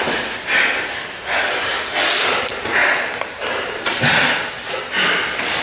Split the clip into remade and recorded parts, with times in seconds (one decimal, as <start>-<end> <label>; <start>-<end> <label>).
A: 0.0-2.5 recorded; 2.5-4.2 remade; 4.2-5.6 recorded